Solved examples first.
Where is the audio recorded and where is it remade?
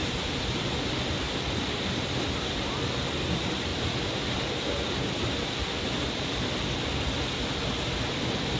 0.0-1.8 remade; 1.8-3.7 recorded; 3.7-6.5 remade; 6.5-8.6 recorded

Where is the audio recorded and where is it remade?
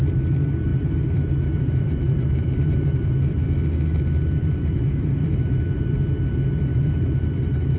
0.0-0.7 recorded; 0.7-3.3 remade; 3.3-4.4 recorded; 4.4-5.3 remade; 5.3-6.7 recorded; 6.7-7.8 remade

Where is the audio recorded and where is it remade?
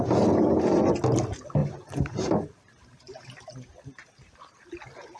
0.0-1.6 recorded; 1.6-4.7 remade; 4.7-5.2 recorded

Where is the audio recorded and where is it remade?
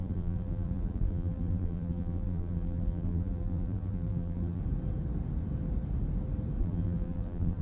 0.0-4.6 remade; 4.6-6.6 recorded; 6.6-7.6 remade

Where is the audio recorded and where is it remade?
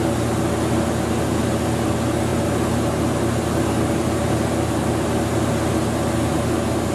0.0-6.9 recorded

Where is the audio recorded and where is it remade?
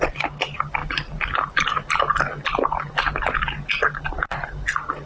0.0-5.1 recorded